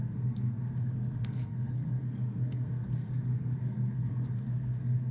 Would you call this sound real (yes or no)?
no